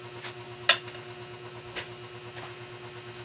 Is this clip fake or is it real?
real